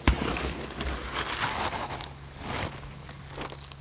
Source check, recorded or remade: remade